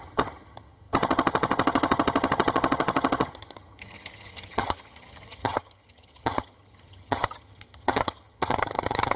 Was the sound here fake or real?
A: fake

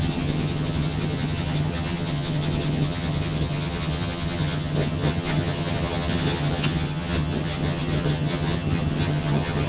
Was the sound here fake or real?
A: fake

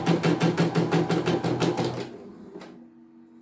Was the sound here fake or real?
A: real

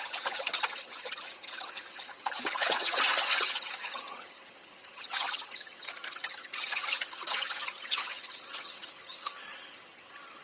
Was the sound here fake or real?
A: fake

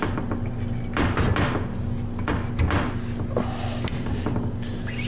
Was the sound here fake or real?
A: real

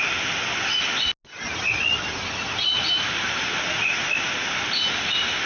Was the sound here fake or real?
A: real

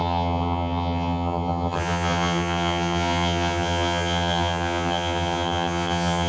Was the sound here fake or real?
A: fake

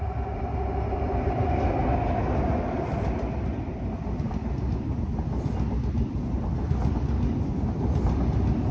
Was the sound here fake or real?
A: real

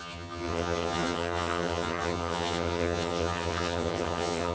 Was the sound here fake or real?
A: fake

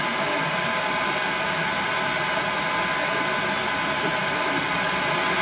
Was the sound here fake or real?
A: real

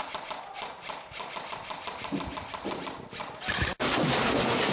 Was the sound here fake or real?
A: real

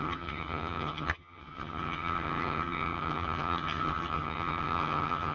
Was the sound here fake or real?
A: fake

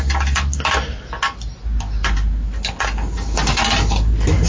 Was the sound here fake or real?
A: real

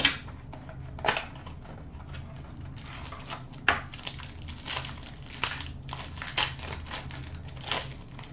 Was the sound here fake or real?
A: real